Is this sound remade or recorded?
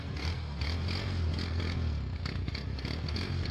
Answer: remade